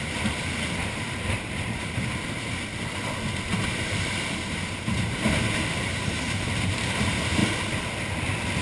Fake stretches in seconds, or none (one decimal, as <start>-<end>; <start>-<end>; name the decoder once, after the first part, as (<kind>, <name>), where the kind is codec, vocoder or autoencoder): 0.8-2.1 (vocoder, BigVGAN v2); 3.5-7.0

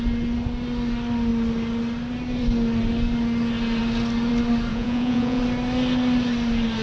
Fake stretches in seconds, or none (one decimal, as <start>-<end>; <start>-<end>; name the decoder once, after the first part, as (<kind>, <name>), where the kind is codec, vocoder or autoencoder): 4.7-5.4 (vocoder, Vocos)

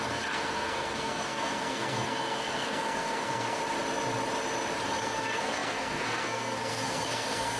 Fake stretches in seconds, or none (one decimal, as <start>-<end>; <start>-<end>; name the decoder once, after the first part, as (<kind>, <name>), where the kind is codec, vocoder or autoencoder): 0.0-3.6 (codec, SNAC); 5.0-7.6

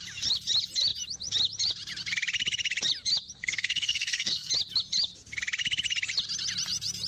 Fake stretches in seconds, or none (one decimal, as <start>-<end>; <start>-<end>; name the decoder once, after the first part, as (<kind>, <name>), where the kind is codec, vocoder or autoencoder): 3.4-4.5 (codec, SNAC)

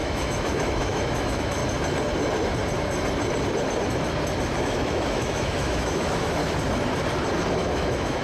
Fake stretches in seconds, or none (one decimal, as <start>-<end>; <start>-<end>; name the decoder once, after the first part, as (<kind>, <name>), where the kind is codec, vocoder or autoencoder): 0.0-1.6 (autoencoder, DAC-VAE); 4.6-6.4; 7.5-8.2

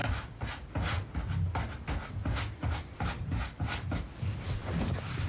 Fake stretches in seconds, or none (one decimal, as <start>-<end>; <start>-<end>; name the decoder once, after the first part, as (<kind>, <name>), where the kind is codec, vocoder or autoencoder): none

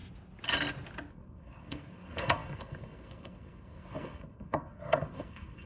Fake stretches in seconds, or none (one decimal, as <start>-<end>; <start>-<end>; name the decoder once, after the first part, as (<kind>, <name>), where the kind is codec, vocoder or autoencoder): 1.1-5.7 (codec, SNAC)